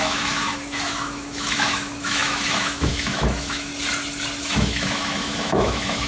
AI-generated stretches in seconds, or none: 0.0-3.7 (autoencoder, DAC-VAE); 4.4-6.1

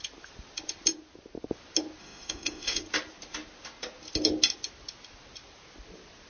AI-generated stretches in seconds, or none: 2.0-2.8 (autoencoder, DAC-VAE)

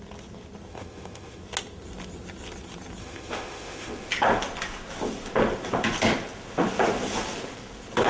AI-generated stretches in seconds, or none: 0.7-1.4 (autoencoder, DAC-VAE); 3.0-4.1

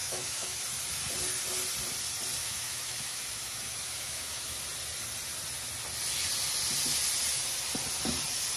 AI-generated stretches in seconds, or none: 0.0-0.6 (autoencoder, DAC-VAE); 2.4-4.6

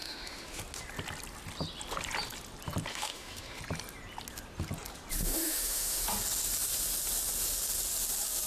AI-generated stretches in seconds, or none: 0.0-0.6 (autoencoder, DAC-VAE); 2.9-3.6; 5.2-6.0